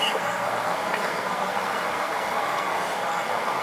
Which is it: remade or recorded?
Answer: remade